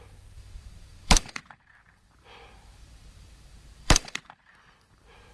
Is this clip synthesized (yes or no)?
yes